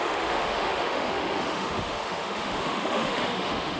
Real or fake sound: fake